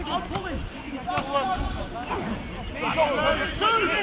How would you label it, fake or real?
real